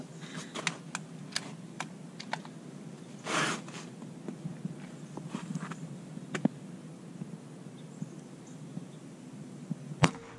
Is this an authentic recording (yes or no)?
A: yes